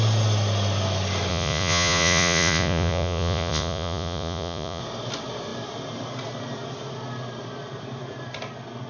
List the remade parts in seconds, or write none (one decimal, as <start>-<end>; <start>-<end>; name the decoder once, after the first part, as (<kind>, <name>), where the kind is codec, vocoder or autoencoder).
1.3-4.8 (vocoder, Vocos)